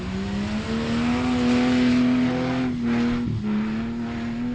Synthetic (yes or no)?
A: no